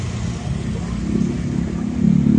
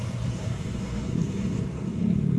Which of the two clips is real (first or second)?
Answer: first